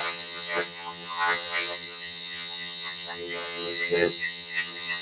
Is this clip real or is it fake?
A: fake